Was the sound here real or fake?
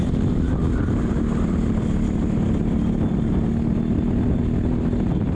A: real